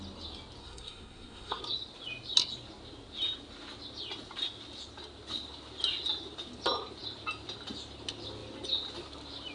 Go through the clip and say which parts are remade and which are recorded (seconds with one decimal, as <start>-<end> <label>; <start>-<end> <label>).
0.0-0.6 recorded; 0.6-1.6 remade; 1.6-9.5 recorded